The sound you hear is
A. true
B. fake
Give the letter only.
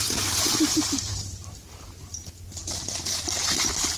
B